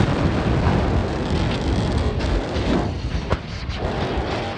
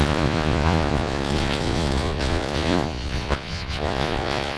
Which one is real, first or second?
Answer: first